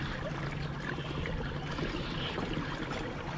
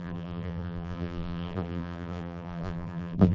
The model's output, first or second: second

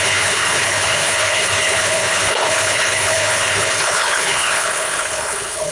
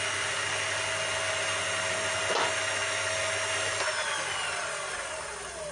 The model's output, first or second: first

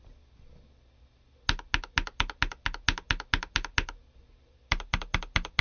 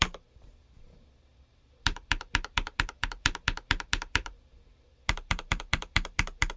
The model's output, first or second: second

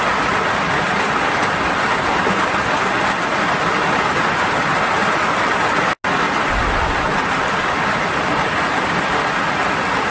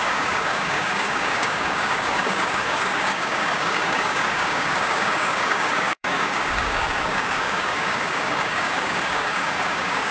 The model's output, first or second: second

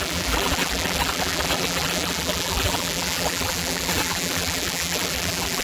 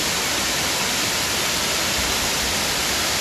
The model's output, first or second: first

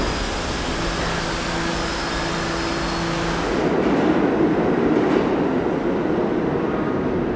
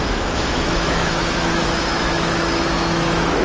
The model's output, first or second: second